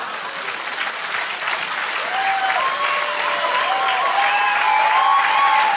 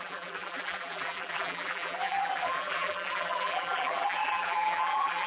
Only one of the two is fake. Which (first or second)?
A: second